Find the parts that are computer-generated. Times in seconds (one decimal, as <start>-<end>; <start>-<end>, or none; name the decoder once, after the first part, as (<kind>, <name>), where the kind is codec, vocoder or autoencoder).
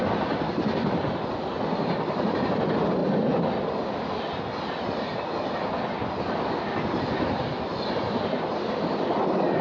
none